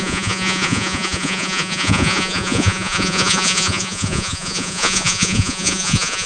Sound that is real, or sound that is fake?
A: fake